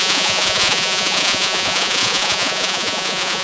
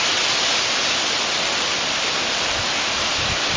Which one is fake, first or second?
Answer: first